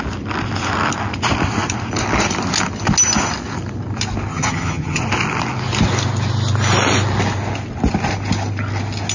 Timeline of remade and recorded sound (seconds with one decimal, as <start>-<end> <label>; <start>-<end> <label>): 0.0-4.3 recorded; 4.3-5.0 remade; 5.0-9.1 recorded